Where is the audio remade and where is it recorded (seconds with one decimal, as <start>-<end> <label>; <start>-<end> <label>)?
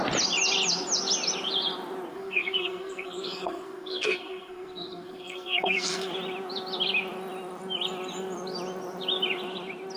0.0-2.1 recorded; 2.1-6.1 remade; 6.1-10.0 recorded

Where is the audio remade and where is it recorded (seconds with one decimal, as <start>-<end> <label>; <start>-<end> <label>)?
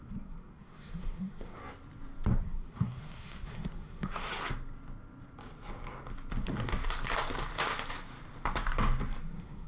0.0-1.6 remade; 1.6-2.3 recorded; 2.3-4.3 remade; 4.3-9.2 recorded; 9.2-9.7 remade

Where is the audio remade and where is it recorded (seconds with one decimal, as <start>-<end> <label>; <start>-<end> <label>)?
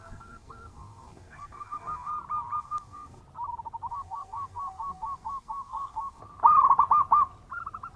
0.0-2.1 remade; 2.1-2.6 recorded; 2.6-3.2 remade; 3.2-3.9 recorded; 3.9-6.2 remade; 6.2-8.0 recorded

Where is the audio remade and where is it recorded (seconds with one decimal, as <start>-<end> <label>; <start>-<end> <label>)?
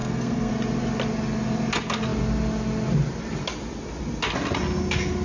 0.0-0.5 remade; 0.5-5.2 recorded